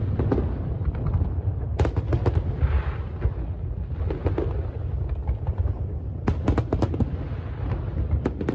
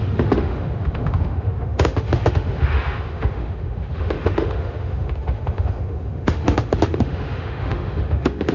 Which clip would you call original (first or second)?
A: first